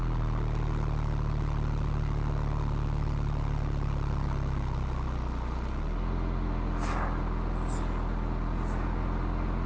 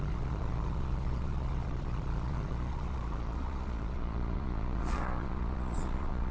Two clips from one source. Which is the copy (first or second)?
second